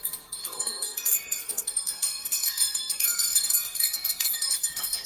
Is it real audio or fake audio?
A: fake